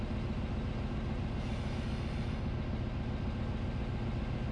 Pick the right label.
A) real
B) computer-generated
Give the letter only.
A